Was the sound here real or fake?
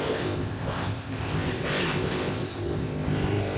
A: fake